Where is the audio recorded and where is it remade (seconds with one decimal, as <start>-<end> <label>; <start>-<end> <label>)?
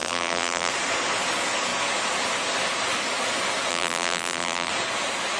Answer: 0.0-0.7 remade; 0.7-3.7 recorded; 3.7-4.7 remade; 4.7-5.4 recorded